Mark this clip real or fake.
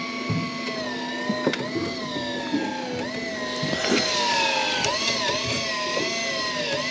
real